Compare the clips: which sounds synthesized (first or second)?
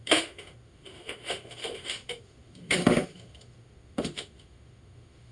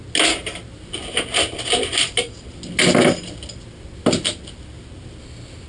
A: first